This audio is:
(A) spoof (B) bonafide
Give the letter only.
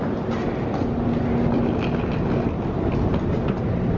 B